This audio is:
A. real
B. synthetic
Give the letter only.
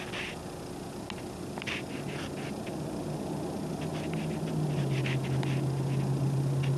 A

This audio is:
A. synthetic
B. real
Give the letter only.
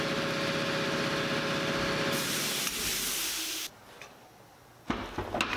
B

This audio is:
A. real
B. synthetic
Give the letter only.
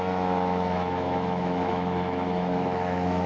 B